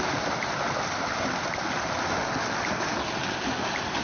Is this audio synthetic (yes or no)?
no